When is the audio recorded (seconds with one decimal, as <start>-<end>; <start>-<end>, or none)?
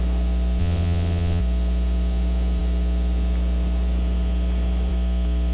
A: 0.0-0.6; 1.4-5.5